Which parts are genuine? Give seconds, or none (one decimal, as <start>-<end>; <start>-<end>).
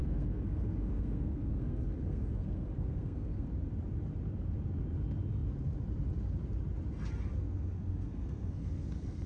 3.5-7.3